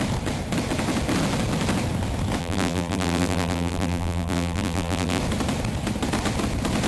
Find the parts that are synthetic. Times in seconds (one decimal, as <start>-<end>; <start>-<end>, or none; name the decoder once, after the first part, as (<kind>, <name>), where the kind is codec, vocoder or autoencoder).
2.4-5.2 (vocoder, BigVGAN v2)